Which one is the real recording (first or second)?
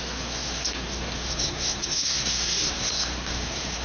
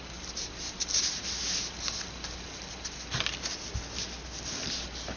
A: second